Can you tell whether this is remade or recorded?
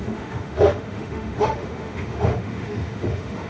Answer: remade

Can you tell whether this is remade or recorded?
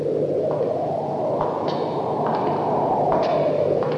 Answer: recorded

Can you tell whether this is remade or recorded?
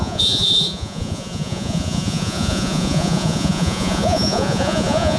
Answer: remade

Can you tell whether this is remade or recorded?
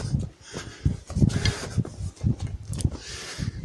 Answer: recorded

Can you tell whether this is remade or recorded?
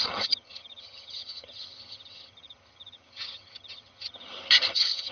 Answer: remade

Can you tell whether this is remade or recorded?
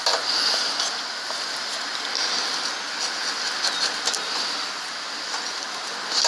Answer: recorded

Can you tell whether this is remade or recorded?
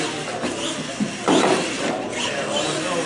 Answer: recorded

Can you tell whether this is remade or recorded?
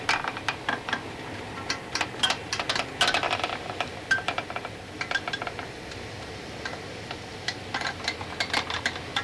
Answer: remade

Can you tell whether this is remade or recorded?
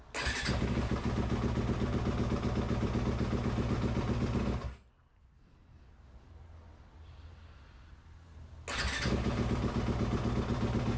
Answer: recorded